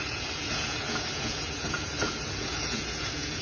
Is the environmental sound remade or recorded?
remade